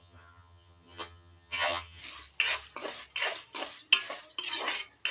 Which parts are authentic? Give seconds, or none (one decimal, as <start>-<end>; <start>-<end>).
2.0-5.1